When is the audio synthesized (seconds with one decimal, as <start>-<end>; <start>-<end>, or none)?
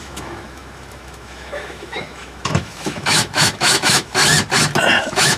0.0-4.2; 5.0-5.4